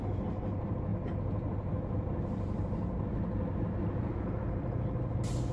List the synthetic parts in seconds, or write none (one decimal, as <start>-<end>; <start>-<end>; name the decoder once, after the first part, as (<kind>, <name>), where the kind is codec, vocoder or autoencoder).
none